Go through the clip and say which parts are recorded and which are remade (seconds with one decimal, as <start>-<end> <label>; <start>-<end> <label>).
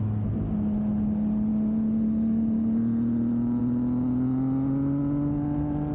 0.0-5.9 recorded